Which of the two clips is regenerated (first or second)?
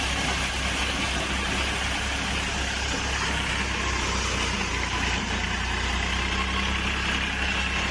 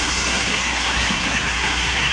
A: second